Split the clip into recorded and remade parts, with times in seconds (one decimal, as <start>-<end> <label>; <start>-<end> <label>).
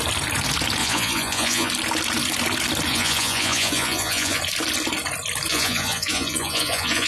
0.0-0.8 recorded; 0.8-1.7 remade; 1.7-2.9 recorded; 2.9-4.4 remade; 4.4-5.5 recorded; 5.5-7.1 remade